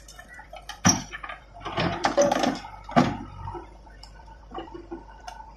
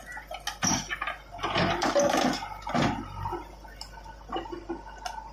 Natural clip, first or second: second